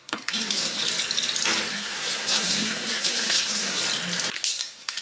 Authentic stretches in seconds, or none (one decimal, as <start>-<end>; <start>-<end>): 0.8-1.7; 3.8-4.5